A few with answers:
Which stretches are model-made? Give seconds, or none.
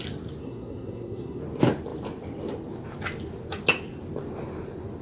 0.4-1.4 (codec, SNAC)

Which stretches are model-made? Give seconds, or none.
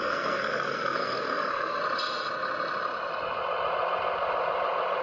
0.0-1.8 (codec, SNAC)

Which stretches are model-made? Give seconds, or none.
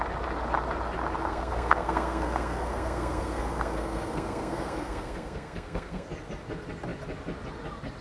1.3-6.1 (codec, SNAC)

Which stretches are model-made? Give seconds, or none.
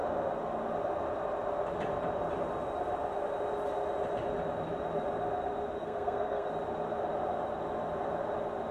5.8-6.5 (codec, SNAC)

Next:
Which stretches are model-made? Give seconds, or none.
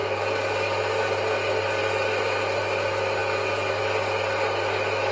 none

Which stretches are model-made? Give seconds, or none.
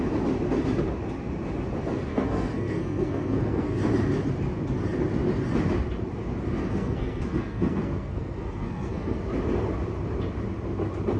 2.1-3.8 (codec, SNAC); 6.6-9.2